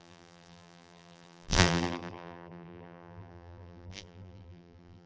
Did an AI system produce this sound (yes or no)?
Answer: yes